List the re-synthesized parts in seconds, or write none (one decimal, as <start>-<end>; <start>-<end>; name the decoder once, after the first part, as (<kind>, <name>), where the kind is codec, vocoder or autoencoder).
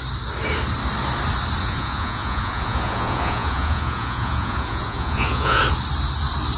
1.6-5.6 (vocoder, Vocos)